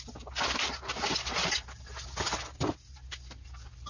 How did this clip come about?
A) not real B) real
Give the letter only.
B